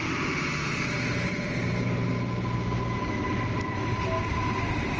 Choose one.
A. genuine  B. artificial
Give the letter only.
A